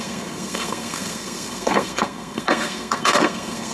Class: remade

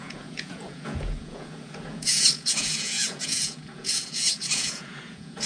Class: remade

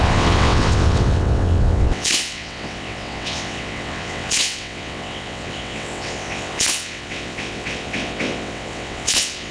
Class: remade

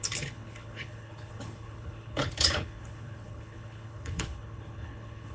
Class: remade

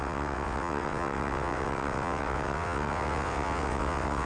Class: remade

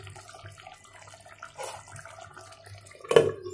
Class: recorded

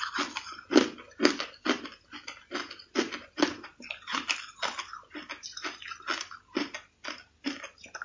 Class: recorded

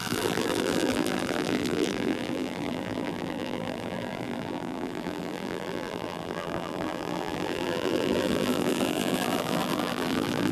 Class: remade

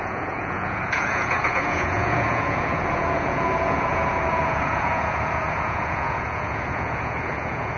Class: remade